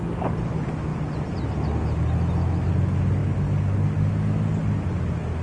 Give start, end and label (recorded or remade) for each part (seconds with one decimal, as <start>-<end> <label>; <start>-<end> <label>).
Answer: 0.0-5.4 recorded